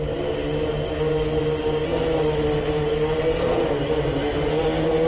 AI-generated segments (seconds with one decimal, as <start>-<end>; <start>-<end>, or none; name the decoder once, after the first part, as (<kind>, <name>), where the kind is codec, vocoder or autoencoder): none